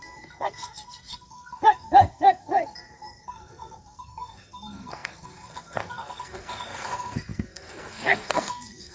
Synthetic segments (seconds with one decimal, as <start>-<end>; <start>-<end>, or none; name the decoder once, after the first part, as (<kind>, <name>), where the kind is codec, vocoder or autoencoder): 0.0-8.9 (codec, SNAC)